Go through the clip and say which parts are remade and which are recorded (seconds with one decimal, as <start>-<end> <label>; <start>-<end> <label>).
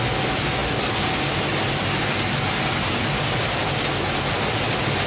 0.0-5.1 recorded